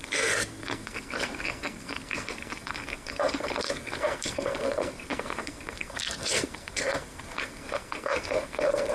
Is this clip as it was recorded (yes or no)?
no